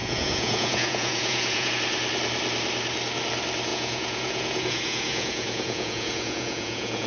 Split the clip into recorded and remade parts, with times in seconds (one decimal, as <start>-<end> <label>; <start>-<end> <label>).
0.0-1.7 remade; 1.7-3.7 recorded; 3.7-7.1 remade